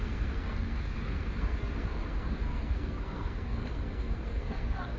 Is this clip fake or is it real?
fake